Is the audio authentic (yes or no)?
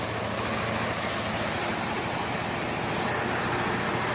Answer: yes